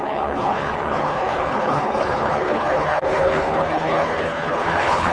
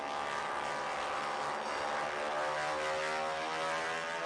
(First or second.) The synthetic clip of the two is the first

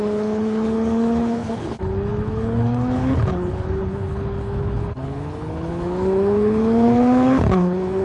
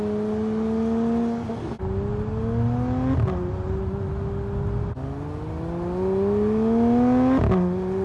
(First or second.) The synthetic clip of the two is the first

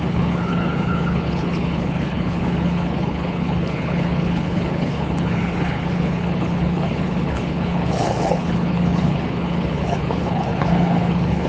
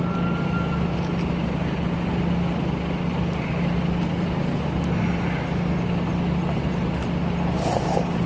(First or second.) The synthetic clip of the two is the first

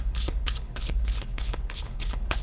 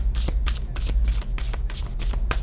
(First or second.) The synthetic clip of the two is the first